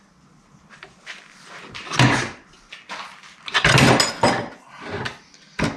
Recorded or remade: recorded